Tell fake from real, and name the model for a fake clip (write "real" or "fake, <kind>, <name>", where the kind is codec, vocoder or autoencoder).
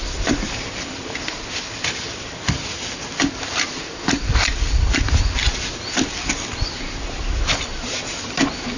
real